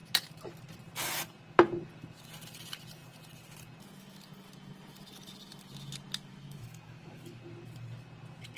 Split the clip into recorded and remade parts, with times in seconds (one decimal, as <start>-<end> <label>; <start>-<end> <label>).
0.0-6.3 recorded; 6.3-7.4 remade; 7.4-8.6 recorded